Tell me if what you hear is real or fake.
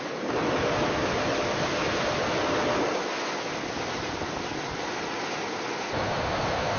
real